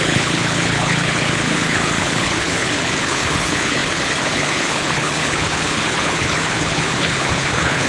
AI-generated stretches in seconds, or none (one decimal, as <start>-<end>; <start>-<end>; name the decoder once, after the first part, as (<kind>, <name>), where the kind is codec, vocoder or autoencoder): 0.0-7.9 (codec, HILCodec)